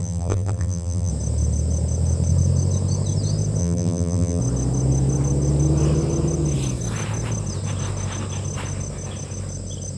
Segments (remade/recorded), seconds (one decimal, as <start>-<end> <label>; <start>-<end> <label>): 0.0-1.1 remade; 1.1-3.6 recorded; 3.6-4.4 remade; 4.4-10.0 recorded